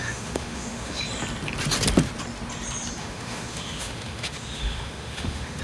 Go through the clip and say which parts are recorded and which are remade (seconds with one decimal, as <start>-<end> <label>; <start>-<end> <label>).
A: 0.0-1.0 remade; 1.0-3.0 recorded; 3.0-5.6 remade